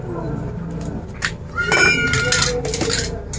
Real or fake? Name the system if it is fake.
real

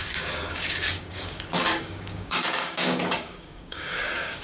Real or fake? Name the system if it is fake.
fake, codec, DAC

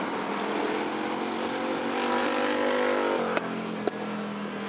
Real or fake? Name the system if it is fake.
real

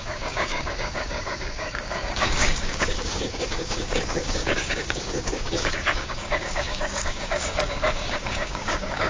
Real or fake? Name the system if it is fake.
fake, codec, DAC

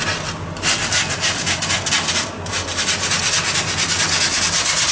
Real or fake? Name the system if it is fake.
real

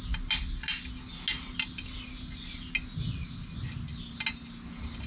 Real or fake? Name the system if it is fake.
real